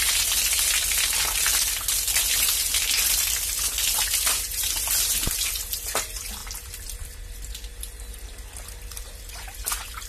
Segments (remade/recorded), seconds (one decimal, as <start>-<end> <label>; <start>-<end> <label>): 0.0-10.1 recorded